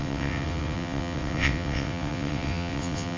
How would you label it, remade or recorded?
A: remade